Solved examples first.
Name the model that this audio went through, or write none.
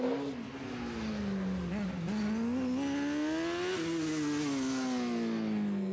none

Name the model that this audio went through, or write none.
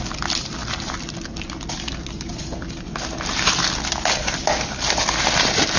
none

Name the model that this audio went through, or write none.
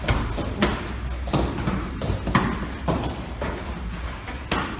none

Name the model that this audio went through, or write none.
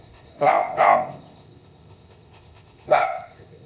codec, ZipCodec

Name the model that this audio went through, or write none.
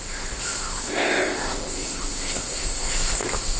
codec, ZipCodec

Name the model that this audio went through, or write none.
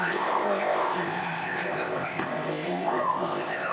codec, ZipCodec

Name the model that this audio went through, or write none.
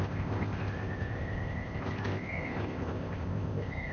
codec, ZipCodec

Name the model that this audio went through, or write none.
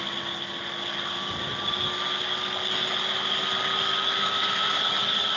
none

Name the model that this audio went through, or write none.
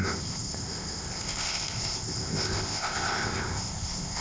codec, ZipCodec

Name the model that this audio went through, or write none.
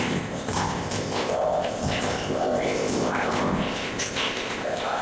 codec, ZipCodec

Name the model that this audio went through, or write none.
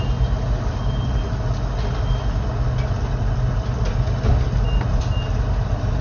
none